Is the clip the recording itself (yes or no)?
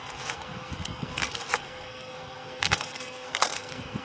no